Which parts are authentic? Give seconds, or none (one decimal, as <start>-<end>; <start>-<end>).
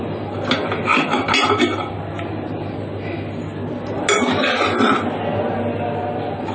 0.0-6.5